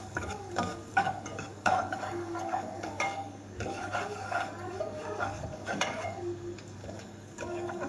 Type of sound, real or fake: fake